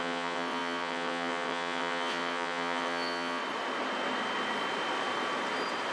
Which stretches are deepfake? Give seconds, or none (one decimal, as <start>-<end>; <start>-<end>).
0.0-3.4